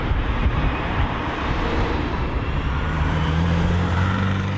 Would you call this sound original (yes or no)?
no